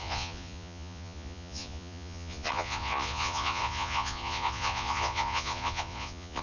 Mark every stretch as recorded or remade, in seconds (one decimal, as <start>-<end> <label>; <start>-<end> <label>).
0.0-6.4 remade